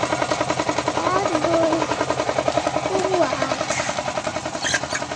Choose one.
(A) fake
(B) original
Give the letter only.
B